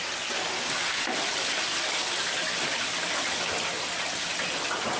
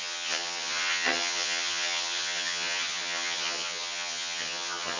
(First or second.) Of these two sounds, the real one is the first